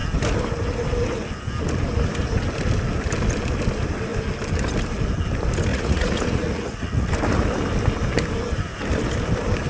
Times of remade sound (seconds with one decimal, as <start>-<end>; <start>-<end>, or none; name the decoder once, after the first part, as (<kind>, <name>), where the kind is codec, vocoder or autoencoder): 5.7-7.1 (vocoder, Vocos)